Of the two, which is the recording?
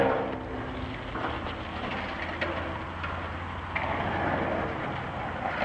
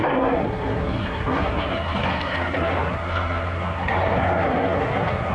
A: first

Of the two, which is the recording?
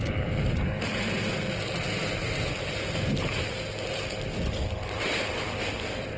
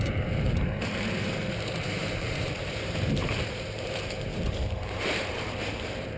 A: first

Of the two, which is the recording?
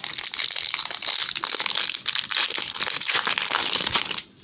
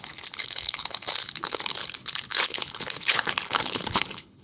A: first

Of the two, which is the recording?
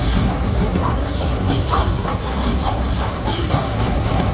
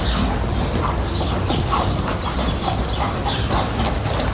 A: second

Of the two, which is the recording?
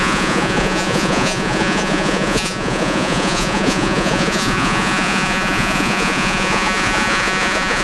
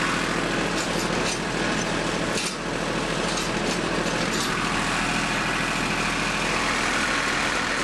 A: second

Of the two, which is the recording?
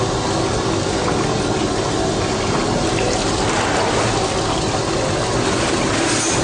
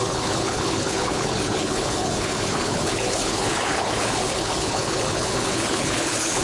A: first